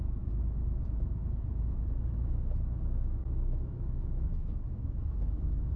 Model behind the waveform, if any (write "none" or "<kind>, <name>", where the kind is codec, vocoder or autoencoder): autoencoder, DAC-VAE